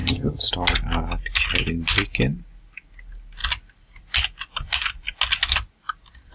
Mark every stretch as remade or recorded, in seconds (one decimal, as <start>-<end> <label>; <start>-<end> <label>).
0.0-0.5 remade; 0.5-6.3 recorded

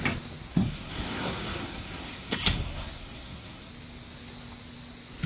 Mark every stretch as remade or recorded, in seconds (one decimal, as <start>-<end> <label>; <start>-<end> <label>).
0.0-0.5 recorded; 0.5-3.7 remade; 3.7-5.3 recorded